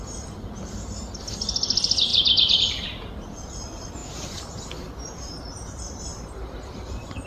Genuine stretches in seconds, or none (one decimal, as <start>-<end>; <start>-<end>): 2.1-2.6